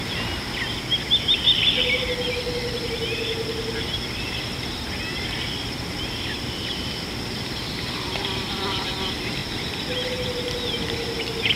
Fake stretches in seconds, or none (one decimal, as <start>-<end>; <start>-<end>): none